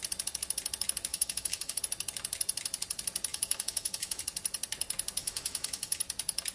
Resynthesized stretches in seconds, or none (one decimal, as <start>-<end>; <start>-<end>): 1.1-1.8; 3.3-4.2; 5.2-6.0